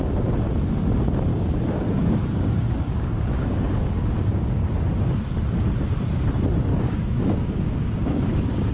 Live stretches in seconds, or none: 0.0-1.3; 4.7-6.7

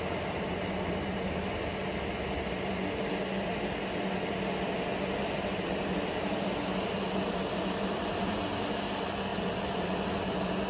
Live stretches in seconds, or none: 0.0-10.7

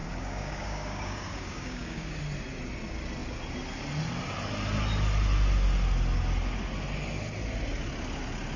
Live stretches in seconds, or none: 2.2-8.6

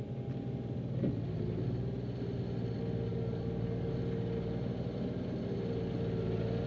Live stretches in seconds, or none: 0.0-3.1; 3.9-6.7